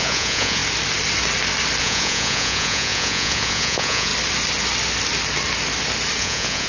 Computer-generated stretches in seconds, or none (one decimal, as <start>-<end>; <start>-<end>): 0.0-0.6; 1.8-4.1; 6.2-6.7